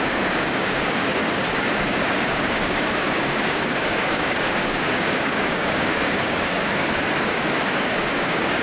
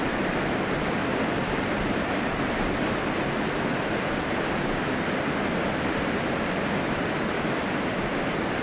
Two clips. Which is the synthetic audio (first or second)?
first